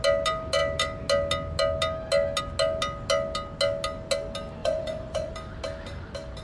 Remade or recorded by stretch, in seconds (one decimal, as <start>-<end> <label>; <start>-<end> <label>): 0.0-4.6 recorded; 4.6-5.3 remade; 5.3-6.4 recorded